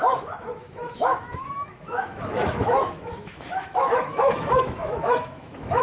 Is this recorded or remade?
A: remade